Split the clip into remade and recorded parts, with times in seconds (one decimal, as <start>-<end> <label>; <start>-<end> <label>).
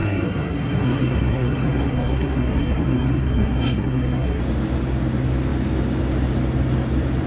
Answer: 0.0-4.4 remade; 4.4-7.3 recorded